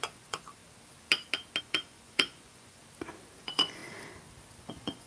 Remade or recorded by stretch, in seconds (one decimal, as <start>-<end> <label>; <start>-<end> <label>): 0.0-0.6 remade; 0.6-1.6 recorded; 1.6-2.8 remade; 2.8-3.4 recorded; 3.4-3.8 remade; 3.8-4.6 recorded; 4.6-5.1 remade